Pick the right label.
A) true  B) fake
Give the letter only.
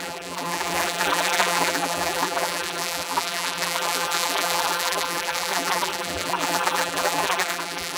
B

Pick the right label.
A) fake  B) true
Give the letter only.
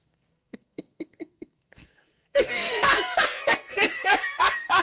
A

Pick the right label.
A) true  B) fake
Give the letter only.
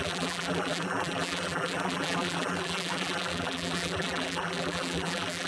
B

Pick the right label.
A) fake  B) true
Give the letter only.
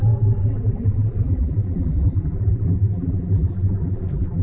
A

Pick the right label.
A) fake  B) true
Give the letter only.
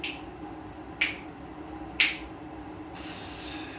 B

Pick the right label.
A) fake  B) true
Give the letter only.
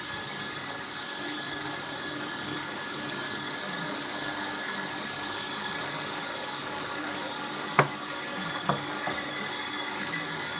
A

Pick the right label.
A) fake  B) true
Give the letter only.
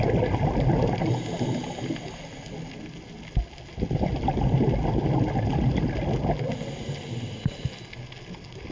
B